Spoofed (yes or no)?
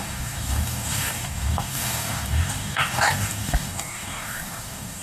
yes